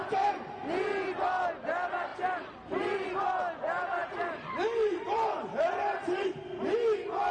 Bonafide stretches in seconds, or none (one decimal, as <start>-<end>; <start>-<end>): 0.0-2.1; 3.1-4.0; 6.3-7.3